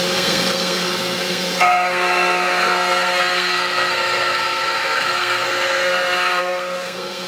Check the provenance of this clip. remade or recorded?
remade